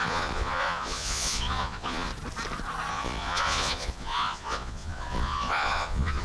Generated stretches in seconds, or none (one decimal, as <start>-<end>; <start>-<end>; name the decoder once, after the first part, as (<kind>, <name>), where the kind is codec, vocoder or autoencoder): 0.0-2.1 (vocoder, Vocos); 2.9-6.2